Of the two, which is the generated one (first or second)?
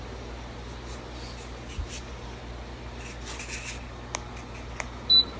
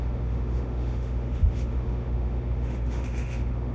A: second